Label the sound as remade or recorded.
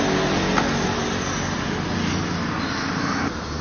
recorded